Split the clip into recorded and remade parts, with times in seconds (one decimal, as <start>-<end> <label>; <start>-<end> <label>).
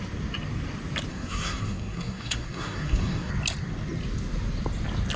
0.0-1.1 recorded; 1.1-3.3 remade; 3.3-5.2 recorded